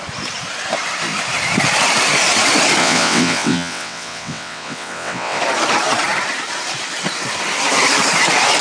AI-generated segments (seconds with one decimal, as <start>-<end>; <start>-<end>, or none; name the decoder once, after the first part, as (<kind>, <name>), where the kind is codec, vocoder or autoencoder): 2.8-5.4 (vocoder, WaveNeXt)